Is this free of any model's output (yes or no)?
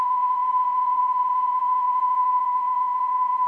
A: no